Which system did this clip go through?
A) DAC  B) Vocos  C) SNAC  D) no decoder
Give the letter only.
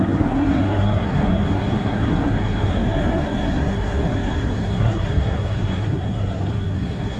C